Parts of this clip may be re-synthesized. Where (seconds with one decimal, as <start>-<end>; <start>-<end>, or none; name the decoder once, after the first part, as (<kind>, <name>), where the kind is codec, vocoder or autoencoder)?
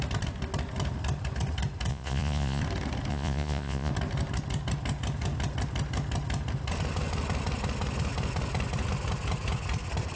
1.9-2.6 (vocoder, Vocos); 3.1-3.9